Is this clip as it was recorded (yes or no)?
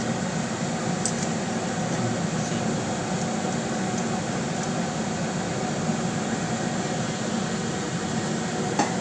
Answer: yes